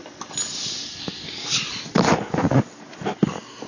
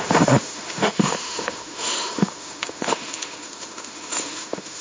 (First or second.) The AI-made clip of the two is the second